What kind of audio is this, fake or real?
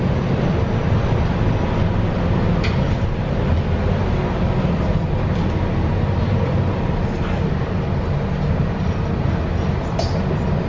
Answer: real